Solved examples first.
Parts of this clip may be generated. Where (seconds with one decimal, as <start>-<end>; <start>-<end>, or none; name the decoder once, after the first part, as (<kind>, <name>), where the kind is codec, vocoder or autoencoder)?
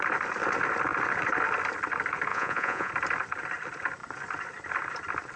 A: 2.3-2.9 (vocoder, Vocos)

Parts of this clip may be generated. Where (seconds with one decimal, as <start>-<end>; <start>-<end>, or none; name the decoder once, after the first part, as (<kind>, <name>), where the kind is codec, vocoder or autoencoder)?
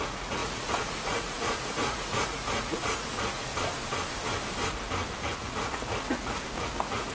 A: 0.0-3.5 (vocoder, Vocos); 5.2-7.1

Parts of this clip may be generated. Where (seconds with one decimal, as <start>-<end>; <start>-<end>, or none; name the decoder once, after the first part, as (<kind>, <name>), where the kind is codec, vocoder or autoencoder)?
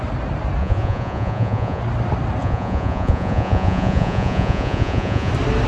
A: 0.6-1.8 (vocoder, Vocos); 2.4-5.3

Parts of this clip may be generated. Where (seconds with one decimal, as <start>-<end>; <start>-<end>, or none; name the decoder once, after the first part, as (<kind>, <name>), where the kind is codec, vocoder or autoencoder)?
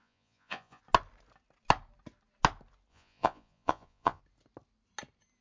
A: 0.0-0.8 (vocoder, Vocos); 2.9-4.2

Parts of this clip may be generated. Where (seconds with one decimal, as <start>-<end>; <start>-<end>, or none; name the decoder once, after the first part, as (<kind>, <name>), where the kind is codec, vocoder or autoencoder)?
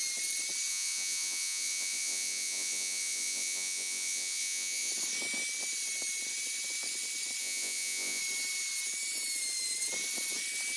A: 0.7-4.9 (vocoder, Vocos); 7.4-8.2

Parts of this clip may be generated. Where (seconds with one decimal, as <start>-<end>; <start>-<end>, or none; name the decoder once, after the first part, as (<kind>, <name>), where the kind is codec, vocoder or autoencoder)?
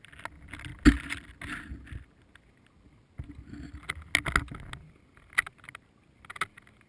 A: none